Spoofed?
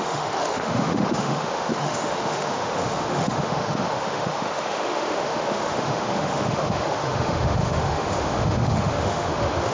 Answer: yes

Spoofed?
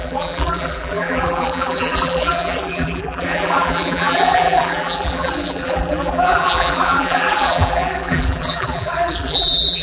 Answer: yes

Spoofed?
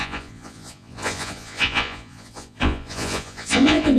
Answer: yes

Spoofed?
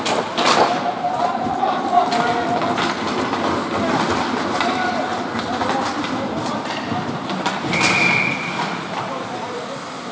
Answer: no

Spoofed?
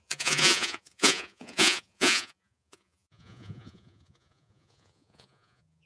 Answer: yes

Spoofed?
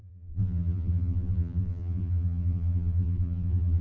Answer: yes